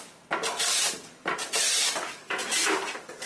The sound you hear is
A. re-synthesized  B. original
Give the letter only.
B